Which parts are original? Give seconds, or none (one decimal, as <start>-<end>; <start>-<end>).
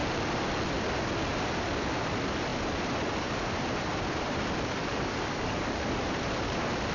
0.0-4.8; 6.0-6.9